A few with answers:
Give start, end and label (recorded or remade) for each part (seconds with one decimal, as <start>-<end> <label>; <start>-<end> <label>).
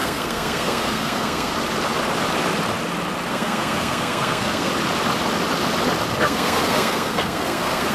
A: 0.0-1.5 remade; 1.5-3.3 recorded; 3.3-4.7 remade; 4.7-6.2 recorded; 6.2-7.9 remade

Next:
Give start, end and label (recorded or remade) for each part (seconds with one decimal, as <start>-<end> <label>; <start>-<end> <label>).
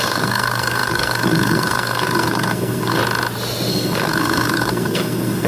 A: 0.0-3.0 remade; 3.0-3.7 recorded; 3.7-5.5 remade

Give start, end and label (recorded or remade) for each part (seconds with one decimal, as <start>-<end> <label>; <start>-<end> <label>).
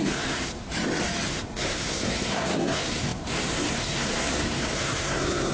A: 0.0-0.6 remade; 0.6-1.3 recorded; 1.3-5.5 remade